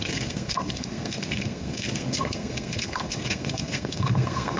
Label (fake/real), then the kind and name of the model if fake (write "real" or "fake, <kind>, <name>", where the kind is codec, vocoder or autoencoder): fake, codec, SNAC